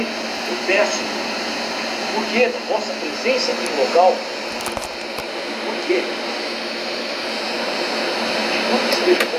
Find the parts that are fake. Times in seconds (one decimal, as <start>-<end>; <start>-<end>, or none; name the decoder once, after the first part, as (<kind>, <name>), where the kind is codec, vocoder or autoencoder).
none